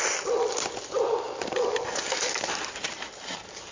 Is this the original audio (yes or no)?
yes